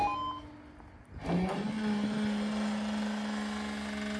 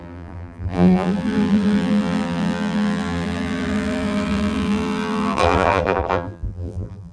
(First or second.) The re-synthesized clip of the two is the second